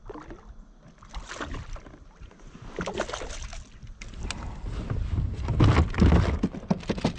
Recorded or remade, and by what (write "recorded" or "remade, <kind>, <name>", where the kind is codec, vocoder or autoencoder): recorded